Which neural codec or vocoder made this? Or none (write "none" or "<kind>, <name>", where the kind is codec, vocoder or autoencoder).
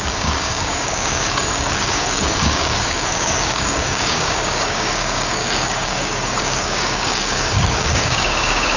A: codec, DAC